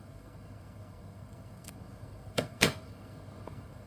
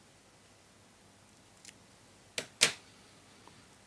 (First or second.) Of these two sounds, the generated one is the first